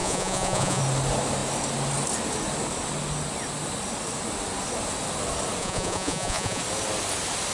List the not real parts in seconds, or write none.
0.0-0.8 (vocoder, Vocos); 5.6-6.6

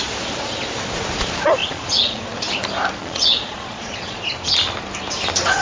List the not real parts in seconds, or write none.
1.6-2.2 (vocoder, Vocos); 3.0-4.2